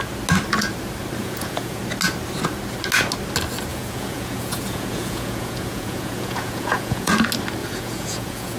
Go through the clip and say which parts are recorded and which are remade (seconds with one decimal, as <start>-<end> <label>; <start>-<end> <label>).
0.0-1.2 recorded; 1.2-1.8 remade; 1.8-3.7 recorded; 3.7-7.1 remade; 7.1-7.6 recorded; 7.6-8.6 remade